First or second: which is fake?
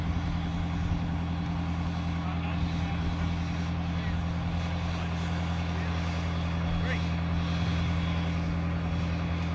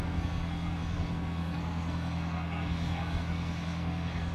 second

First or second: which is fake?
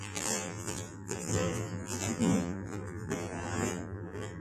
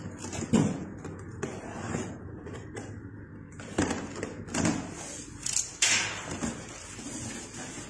first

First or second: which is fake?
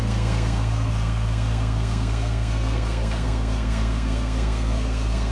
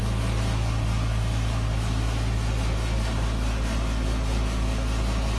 first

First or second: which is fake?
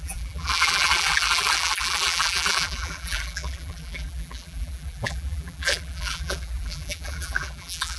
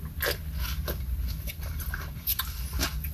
first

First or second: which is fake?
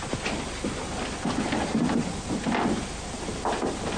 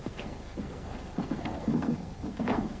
second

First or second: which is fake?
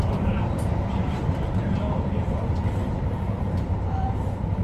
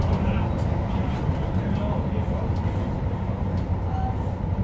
first